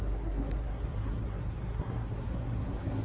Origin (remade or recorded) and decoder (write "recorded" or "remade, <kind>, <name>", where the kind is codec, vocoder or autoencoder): remade, codec, SNAC